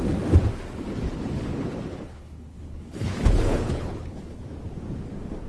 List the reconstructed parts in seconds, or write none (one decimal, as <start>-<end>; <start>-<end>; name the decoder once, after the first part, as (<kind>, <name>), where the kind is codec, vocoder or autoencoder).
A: 1.1-4.4 (codec, HILCodec)

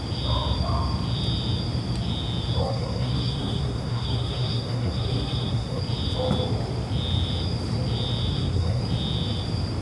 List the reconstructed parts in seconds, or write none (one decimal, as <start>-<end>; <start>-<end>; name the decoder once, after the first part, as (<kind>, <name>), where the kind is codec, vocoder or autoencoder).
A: 2.6-5.8 (codec, SNAC); 8.3-8.8

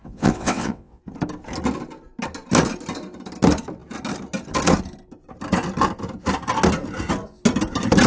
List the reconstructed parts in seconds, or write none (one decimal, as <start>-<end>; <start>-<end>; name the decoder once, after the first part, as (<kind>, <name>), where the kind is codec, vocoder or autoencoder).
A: 0.0-1.0 (vocoder, WaveNeXt)

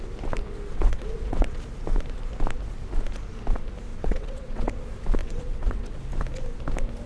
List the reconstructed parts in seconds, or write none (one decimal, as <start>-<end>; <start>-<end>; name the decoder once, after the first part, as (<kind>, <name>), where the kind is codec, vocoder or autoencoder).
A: 0.7-1.6 (vocoder, WaveNeXt); 3.9-4.7; 5.2-6.0

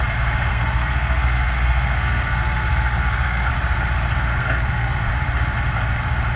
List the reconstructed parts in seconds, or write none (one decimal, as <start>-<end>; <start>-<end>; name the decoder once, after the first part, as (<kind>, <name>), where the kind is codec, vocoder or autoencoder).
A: 0.5-3.5 (codec, SNAC); 4.4-5.1

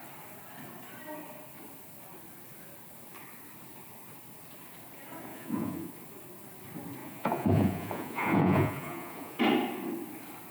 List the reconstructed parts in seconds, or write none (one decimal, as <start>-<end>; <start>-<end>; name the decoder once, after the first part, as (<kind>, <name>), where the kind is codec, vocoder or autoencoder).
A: 5.3-5.9 (vocoder, Vocos); 7.0-9.4

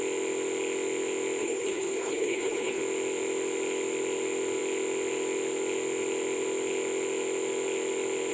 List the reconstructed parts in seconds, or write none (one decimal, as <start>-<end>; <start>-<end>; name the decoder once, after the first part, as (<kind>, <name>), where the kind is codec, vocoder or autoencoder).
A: 1.4-2.8 (codec, HILCodec)

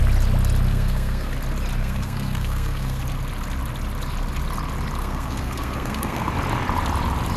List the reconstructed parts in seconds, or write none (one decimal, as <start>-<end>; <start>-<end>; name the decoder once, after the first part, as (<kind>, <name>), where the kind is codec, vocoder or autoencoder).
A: 0.7-1.3 (codec, SNAC); 1.8-3.0; 5.0-6.3